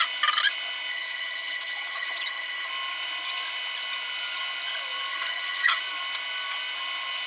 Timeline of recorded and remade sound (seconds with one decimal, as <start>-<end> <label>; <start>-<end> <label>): 0.0-0.9 recorded; 0.9-2.7 remade; 2.7-5.1 recorded; 5.1-5.8 remade; 5.8-7.3 recorded